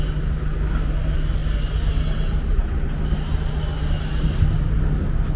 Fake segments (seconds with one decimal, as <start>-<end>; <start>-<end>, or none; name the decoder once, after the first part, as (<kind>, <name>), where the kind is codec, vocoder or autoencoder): none